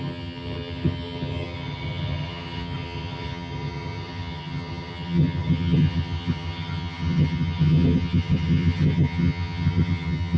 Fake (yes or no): yes